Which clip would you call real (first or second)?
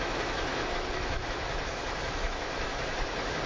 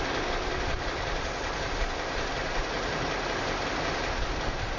second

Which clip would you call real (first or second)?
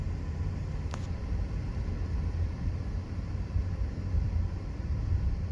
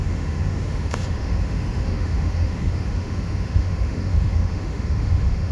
first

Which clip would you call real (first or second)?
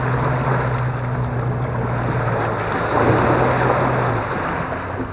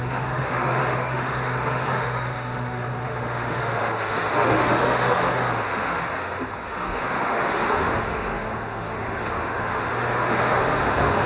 first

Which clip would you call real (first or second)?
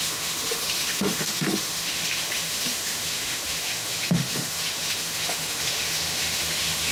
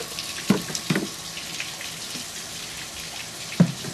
second